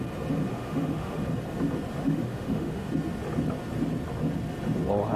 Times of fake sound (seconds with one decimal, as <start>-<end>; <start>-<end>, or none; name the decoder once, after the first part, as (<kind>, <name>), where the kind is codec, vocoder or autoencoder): 0.5-1.2 (autoencoder, DAC-VAE); 2.0-2.9